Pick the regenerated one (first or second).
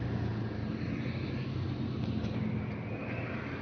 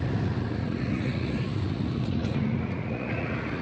second